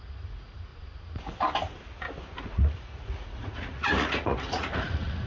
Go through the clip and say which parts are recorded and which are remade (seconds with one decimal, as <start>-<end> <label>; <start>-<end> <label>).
0.0-0.7 remade; 0.7-2.4 recorded; 2.4-5.3 remade